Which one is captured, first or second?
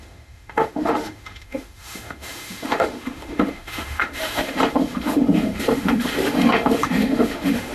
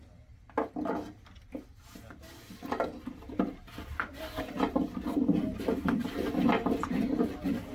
second